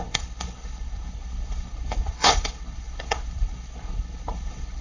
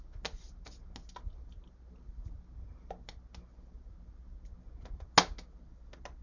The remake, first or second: first